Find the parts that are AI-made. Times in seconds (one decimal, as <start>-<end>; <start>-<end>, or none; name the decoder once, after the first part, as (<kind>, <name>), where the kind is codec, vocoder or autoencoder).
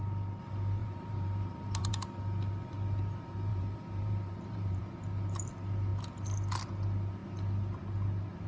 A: 0.8-1.9 (vocoder, BigVGAN v2); 3.5-4.8